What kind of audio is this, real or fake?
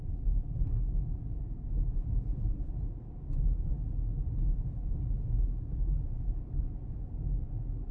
real